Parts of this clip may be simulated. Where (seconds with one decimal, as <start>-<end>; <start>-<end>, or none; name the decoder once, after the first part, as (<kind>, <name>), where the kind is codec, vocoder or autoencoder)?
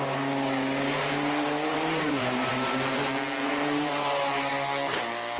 1.0-2.5 (vocoder, BigVGAN v2); 3.4-4.5